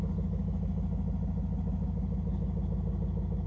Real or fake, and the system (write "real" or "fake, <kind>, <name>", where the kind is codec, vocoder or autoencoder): real